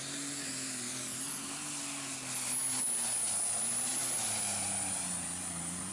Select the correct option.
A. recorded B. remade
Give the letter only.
A